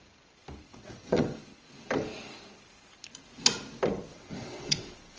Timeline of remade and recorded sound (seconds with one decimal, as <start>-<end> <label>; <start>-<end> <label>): 0.0-0.7 recorded; 0.7-1.4 remade; 1.4-4.1 recorded; 4.1-5.2 remade